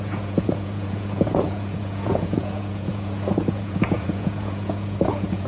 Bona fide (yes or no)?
no